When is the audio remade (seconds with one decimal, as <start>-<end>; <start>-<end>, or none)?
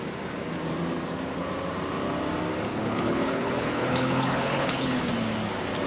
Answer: 2.7-5.1